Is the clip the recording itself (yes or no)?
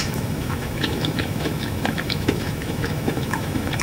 no